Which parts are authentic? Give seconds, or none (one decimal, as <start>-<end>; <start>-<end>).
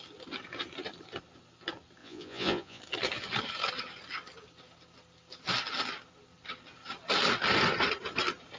0.0-2.0; 2.8-8.6